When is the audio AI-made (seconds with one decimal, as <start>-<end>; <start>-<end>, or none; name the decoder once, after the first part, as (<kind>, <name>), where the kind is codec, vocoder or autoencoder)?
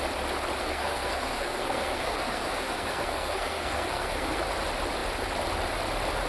0.6-4.4 (codec, SNAC)